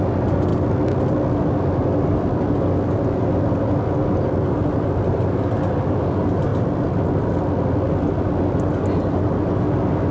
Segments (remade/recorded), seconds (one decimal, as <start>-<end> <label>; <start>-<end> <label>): 0.0-10.1 recorded